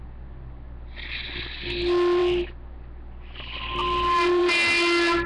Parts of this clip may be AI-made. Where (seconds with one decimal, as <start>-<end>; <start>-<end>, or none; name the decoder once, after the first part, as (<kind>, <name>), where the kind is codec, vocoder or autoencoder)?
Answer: none